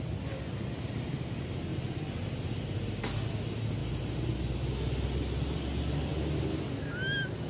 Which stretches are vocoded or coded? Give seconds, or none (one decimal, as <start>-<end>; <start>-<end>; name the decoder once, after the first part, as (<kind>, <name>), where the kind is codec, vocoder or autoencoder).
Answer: none